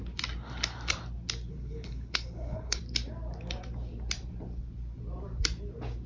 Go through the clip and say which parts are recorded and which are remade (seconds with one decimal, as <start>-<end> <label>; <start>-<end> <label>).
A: 0.0-1.5 recorded; 1.5-2.8 remade; 2.8-6.1 recorded